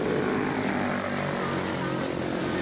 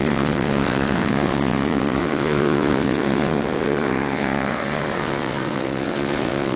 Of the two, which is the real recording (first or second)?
first